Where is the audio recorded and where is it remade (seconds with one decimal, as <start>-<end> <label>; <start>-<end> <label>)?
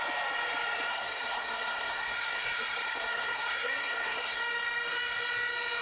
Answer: 0.0-0.9 recorded; 0.9-4.4 remade; 4.4-5.8 recorded